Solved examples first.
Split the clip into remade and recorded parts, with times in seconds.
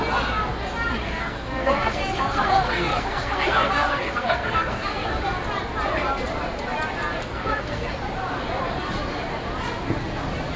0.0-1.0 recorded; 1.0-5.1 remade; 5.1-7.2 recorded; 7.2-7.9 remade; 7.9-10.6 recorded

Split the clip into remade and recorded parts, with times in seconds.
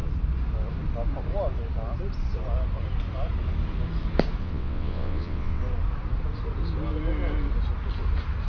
0.0-4.4 recorded; 4.4-5.6 remade; 5.6-8.5 recorded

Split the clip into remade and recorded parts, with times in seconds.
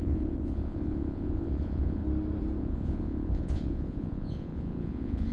0.0-2.0 remade; 2.0-2.6 recorded; 2.6-5.3 remade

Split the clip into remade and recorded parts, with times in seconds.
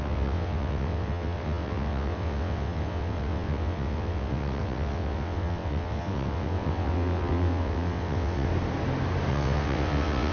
0.0-8.5 remade; 8.5-9.3 recorded; 9.3-10.3 remade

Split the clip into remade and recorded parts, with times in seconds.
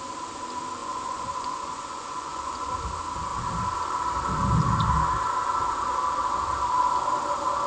0.0-0.8 recorded; 0.8-2.7 remade; 2.7-7.7 recorded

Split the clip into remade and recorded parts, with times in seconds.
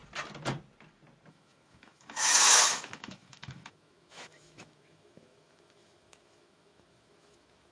0.0-1.3 recorded; 1.3-7.7 remade